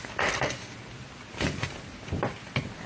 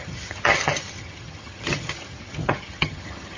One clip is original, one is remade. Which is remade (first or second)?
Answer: second